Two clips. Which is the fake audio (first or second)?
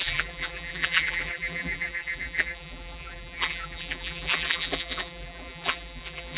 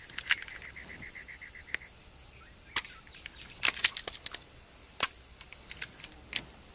first